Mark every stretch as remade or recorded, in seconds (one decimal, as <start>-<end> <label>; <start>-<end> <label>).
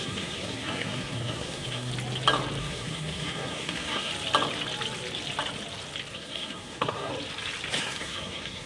0.0-1.9 remade; 1.9-2.6 recorded; 2.6-4.1 remade; 4.1-6.1 recorded; 6.1-7.1 remade; 7.1-7.8 recorded; 7.8-8.7 remade